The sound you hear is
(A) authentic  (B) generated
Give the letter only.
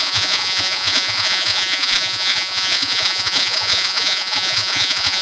B